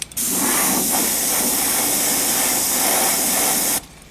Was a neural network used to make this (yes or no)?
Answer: no